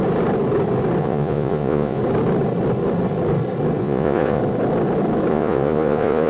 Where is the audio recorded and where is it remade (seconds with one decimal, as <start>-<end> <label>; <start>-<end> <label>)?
0.0-1.0 recorded; 1.0-2.0 remade; 2.0-3.8 recorded; 3.8-4.4 remade; 4.4-5.3 recorded; 5.3-6.3 remade